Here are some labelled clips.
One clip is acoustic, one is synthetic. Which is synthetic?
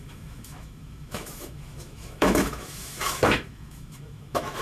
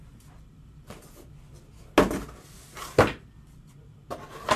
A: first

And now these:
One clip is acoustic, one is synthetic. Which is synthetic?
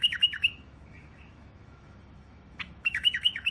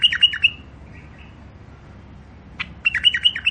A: first